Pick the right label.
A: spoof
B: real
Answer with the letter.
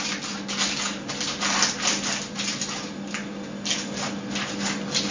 B